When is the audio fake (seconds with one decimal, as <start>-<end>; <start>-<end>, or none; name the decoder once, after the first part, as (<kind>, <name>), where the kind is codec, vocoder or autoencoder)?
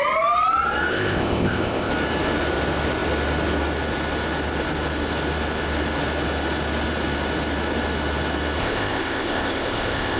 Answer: 0.9-1.9 (codec, ZipCodec); 8.6-10.2